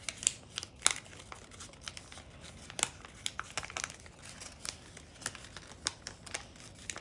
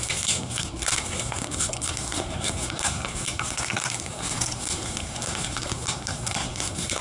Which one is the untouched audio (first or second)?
first